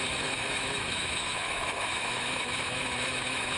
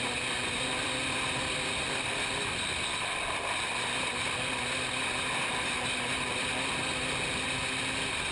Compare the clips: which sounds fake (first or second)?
first